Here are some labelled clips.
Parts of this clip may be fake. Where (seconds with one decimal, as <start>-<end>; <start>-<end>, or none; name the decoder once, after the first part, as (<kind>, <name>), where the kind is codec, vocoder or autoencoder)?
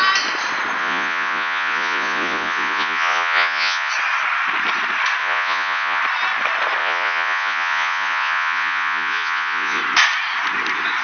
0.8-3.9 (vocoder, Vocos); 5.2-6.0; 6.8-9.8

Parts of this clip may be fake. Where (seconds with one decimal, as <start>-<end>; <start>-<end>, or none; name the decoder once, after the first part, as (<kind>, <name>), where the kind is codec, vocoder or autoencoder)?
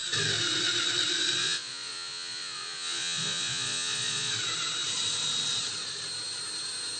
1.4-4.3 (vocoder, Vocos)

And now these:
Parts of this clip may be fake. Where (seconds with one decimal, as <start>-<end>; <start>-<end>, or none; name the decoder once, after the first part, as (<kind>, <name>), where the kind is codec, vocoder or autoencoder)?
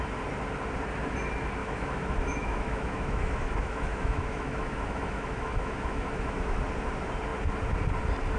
1.6-6.6 (autoencoder, DAC-VAE)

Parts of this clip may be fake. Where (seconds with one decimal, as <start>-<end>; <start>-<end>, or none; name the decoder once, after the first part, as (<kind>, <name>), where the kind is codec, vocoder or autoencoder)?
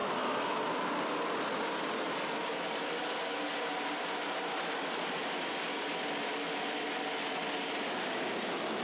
none